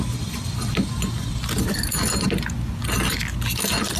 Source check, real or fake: real